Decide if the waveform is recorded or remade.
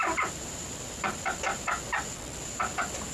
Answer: recorded